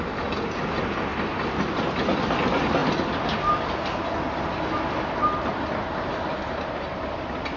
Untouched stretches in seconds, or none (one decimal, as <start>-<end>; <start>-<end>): 0.0-7.6